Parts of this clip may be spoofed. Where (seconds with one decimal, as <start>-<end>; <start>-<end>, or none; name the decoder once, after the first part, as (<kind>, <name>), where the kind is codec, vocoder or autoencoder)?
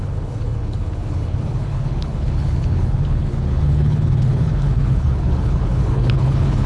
0.0-6.7 (codec, HILCodec)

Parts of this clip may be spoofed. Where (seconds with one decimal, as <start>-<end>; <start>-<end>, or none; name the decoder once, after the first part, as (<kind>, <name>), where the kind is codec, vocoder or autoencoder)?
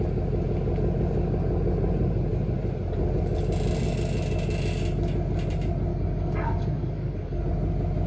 5.9-7.4 (codec, DAC)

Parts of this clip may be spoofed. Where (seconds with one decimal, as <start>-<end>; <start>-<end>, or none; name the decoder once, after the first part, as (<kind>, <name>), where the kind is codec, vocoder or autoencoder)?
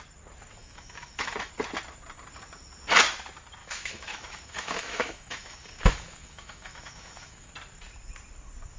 0.6-1.5 (autoencoder, DAC-VAE); 3.6-7.5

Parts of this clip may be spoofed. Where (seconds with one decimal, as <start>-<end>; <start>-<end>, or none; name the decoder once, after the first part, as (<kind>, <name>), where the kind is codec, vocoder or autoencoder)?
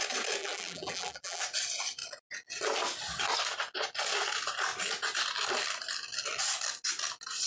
0.4-1.4 (vocoder, BigVGAN v2)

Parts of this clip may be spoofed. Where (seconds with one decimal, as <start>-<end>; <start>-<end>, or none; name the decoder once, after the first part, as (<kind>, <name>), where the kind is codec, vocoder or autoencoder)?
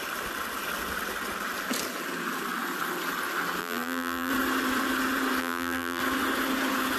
3.6-4.3 (vocoder, BigVGAN v2); 5.4-6.0